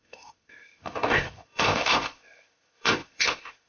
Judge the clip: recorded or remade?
remade